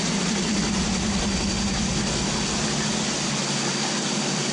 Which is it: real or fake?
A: real